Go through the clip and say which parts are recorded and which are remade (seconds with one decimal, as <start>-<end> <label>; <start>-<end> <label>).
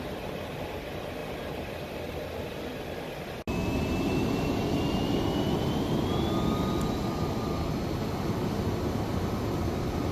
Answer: 0.0-10.1 recorded